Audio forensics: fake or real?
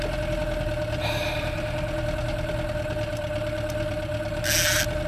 real